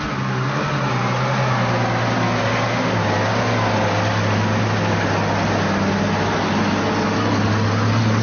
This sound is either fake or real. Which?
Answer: real